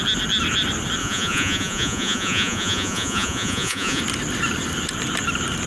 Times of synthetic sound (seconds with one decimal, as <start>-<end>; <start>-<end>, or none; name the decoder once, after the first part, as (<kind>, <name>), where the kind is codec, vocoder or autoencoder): 1.0-4.0 (vocoder, Vocos)